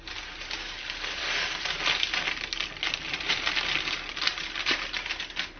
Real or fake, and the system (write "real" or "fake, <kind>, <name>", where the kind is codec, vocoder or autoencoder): real